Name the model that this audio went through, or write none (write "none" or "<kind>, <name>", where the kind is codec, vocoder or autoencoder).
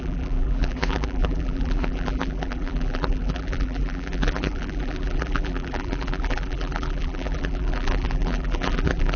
vocoder, BigVGAN v2